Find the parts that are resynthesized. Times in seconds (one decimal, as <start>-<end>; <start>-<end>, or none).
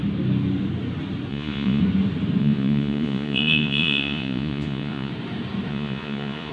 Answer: 1.3-1.8; 2.4-5.1; 5.7-6.5